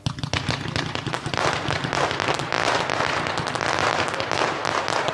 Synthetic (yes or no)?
no